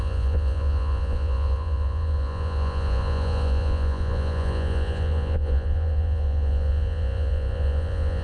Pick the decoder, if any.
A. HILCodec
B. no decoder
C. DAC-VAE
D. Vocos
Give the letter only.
D